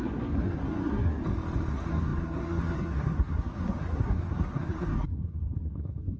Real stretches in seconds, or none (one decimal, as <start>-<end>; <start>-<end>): 1.2-1.7